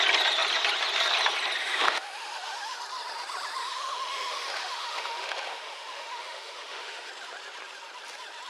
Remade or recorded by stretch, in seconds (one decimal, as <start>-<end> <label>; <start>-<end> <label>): 0.0-1.6 recorded; 1.6-2.8 remade; 2.8-3.6 recorded; 3.6-7.1 remade; 7.1-8.5 recorded